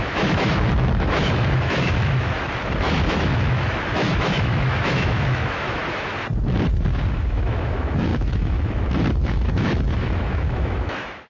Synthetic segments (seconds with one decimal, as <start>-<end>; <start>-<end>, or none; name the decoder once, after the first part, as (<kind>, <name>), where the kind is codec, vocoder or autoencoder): 0.0-5.8 (autoencoder, DAC-VAE); 7.1-11.3